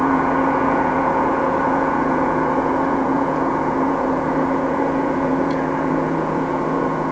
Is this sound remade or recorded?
remade